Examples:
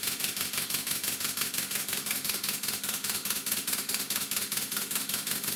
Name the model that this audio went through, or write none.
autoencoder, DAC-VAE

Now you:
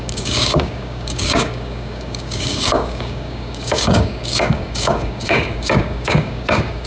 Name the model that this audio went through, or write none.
codec, DAC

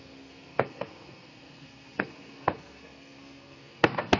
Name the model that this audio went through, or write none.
codec, SNAC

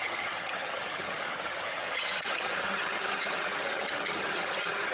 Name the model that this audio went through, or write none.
vocoder, HiFi-GAN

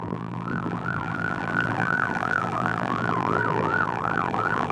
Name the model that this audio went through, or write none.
vocoder, BigVGAN v2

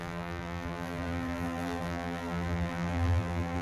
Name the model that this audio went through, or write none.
vocoder, BigVGAN v2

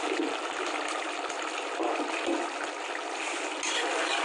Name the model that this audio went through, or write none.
none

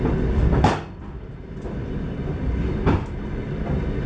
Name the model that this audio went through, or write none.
none